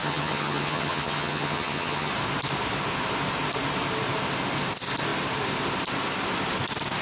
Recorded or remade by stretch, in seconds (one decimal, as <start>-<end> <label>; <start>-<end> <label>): 0.0-2.1 remade; 2.1-7.0 recorded